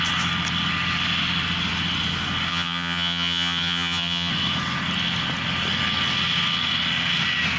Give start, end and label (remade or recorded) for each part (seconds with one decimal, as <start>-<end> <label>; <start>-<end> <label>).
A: 0.0-2.5 recorded; 2.5-4.3 remade; 4.3-7.6 recorded